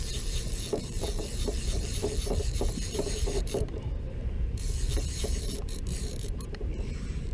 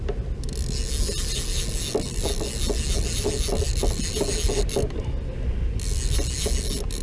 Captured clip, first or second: second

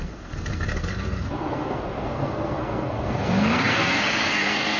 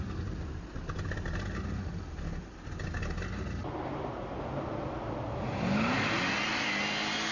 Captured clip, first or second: second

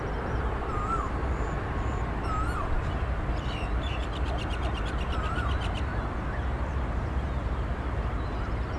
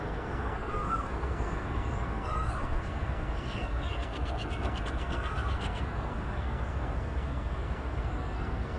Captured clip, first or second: first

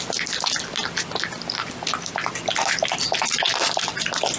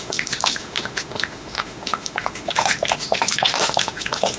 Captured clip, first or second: first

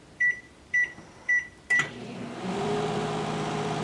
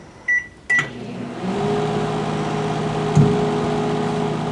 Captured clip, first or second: second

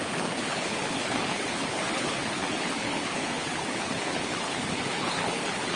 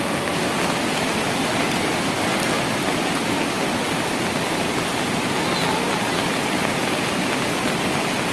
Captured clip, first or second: second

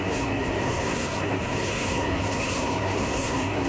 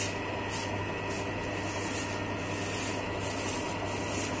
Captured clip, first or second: second